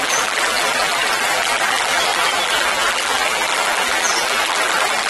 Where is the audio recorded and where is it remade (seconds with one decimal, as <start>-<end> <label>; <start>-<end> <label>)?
0.0-5.1 remade